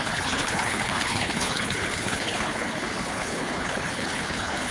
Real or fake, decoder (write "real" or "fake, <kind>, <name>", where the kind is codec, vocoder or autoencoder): fake, codec, HILCodec